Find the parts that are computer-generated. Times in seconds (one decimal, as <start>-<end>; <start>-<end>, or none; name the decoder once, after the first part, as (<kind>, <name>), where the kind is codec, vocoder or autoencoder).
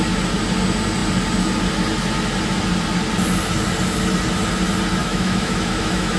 5.0-6.2 (autoencoder, DAC-VAE)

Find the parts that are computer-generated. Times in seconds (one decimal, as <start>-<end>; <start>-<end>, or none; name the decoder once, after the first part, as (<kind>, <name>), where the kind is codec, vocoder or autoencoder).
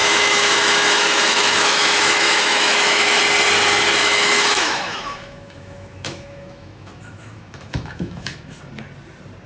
0.0-3.2 (autoencoder, DAC-VAE); 4.0-8.6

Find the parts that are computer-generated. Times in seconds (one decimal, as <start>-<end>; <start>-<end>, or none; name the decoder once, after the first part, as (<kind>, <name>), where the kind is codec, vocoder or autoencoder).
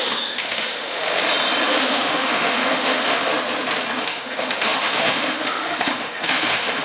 0.0-1.2 (autoencoder, DAC-VAE); 1.7-3.3; 4.0-6.8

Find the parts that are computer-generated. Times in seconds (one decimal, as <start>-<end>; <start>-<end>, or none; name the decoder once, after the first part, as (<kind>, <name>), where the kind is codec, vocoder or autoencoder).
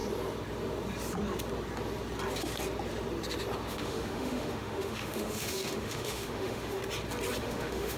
3.7-6.8 (autoencoder, DAC-VAE); 7.4-8.0